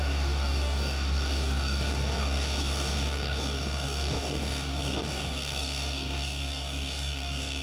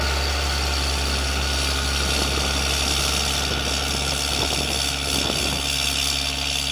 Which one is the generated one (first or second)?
first